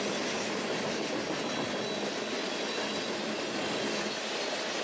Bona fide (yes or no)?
yes